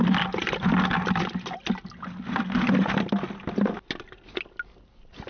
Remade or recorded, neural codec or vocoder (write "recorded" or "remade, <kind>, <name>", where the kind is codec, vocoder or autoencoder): recorded